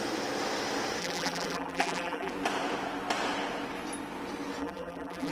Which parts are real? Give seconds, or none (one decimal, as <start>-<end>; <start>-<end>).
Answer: 0.0-1.0; 2.3-4.6